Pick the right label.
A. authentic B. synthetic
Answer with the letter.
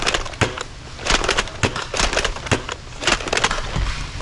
A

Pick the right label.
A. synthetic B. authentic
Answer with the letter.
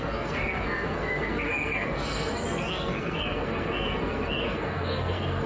A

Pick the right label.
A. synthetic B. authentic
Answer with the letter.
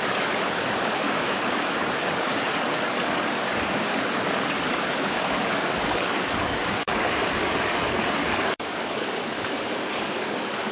A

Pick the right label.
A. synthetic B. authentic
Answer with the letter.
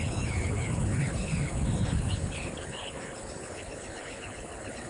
A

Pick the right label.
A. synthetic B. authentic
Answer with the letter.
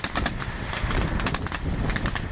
B